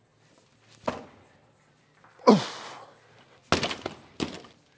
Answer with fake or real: real